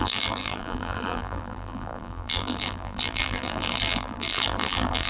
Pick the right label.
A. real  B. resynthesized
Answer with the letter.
B